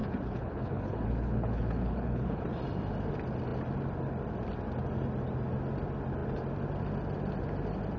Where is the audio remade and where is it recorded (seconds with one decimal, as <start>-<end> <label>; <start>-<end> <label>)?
0.0-2.4 remade; 2.4-8.0 recorded